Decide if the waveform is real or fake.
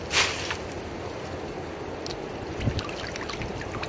real